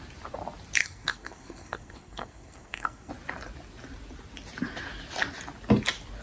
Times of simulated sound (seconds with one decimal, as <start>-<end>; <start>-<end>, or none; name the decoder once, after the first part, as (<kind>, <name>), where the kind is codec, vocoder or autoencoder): 0.8-3.1 (codec, SNAC)